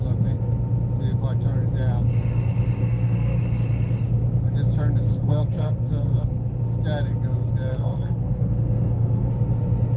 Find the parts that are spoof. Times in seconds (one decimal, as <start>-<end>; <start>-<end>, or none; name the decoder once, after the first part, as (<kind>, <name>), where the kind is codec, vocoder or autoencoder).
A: 2.8-3.4 (codec, SNAC); 5.1-6.6; 7.7-9.3